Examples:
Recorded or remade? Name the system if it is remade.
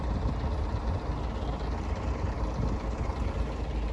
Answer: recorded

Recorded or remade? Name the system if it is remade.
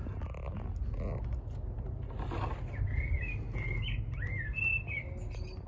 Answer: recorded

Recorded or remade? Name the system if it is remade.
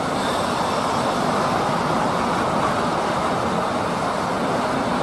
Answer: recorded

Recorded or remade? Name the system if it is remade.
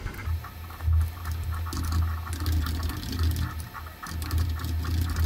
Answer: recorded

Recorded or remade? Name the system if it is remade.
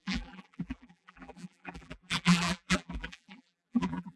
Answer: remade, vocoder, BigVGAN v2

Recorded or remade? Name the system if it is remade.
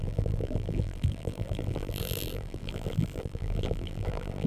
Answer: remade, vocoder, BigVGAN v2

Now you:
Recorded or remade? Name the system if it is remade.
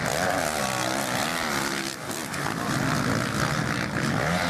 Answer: recorded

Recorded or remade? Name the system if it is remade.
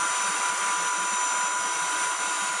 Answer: recorded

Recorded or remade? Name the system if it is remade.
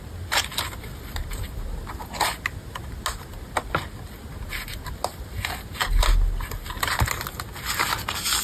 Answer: recorded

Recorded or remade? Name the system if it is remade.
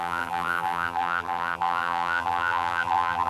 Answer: remade, vocoder, BigVGAN v2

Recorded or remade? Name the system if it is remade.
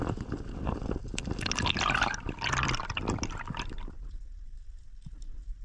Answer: recorded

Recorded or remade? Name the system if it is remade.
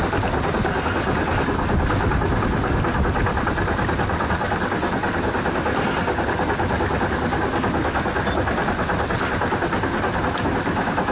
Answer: recorded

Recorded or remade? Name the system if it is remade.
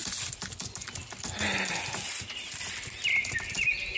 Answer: recorded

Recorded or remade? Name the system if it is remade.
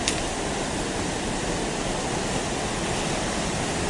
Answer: recorded